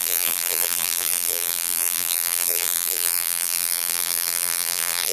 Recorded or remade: remade